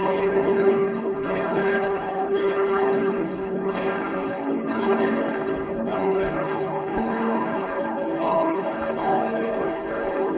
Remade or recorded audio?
remade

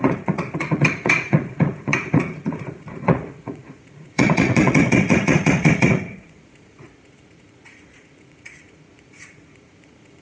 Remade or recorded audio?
remade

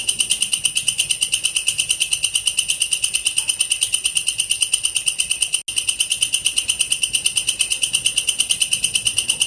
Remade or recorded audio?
recorded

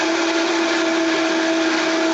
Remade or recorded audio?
recorded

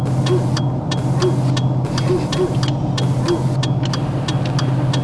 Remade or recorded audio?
recorded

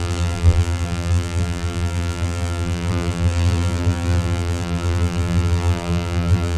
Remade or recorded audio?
remade